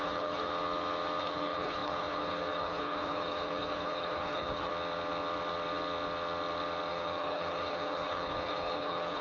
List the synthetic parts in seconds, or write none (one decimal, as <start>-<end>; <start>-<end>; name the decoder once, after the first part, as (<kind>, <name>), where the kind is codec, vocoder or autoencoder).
0.0-0.5 (codec, HILCodec); 1.2-4.7; 6.9-9.2